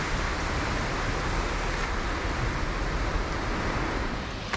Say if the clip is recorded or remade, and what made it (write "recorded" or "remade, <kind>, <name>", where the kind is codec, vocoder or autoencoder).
recorded